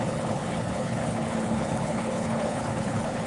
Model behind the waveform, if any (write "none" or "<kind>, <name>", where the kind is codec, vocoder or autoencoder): codec, HILCodec